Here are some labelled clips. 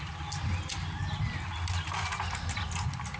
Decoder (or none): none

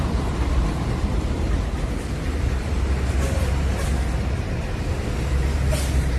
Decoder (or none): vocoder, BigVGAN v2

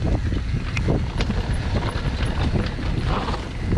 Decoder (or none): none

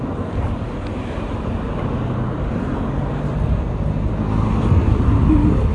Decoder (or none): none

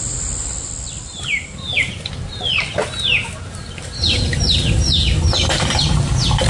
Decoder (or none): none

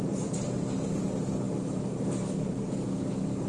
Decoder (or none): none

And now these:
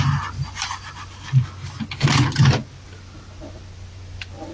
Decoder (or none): none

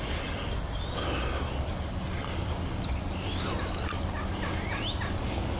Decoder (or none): none